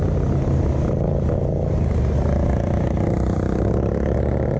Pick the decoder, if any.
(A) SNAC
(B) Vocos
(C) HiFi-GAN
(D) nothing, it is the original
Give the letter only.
D